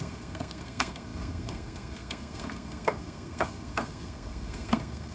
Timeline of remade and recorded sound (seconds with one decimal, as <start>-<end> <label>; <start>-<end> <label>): 0.0-5.1 remade